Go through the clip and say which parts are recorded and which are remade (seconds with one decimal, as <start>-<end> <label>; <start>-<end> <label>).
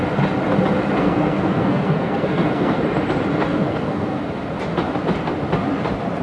0.0-1.0 recorded; 1.0-2.8 remade; 2.8-3.5 recorded; 3.5-4.2 remade; 4.2-6.2 recorded